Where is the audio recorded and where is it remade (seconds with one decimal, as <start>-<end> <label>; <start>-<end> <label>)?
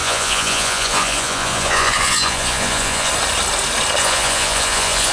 0.0-3.1 remade; 3.1-4.0 recorded; 4.0-5.1 remade